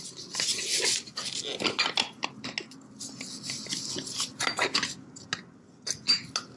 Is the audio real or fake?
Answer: real